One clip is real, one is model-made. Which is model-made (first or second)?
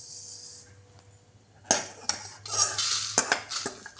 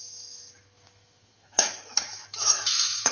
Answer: second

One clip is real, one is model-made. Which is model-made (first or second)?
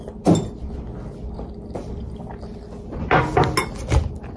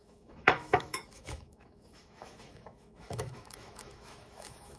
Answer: second